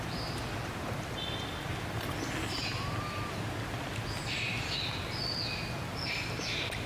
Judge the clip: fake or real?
real